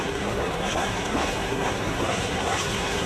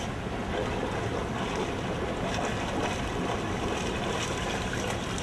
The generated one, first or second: first